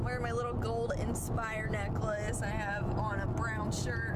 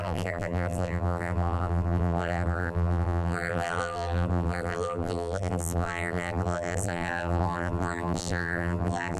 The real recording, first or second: first